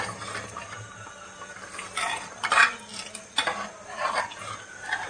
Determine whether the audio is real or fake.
real